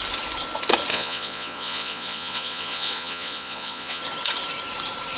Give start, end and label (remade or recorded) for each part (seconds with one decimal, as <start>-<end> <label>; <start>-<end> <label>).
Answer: 0.0-0.9 recorded; 0.9-4.0 remade; 4.0-5.2 recorded